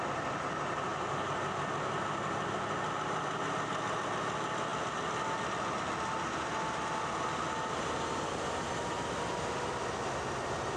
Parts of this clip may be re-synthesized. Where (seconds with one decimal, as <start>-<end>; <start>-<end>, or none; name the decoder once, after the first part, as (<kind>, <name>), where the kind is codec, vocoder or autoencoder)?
none